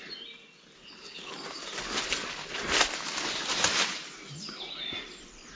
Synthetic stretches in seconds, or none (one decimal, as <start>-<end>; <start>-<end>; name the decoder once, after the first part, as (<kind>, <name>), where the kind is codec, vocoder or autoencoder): 0.8-1.3 (codec, HILCodec)